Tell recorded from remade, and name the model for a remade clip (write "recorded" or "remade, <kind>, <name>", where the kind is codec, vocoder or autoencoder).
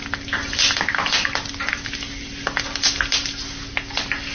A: recorded